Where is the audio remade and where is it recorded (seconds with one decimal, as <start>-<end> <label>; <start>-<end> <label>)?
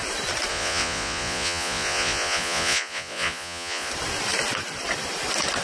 0.0-0.5 recorded; 0.5-3.9 remade; 3.9-5.6 recorded